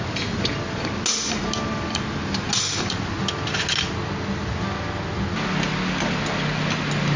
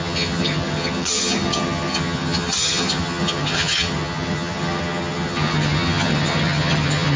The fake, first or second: second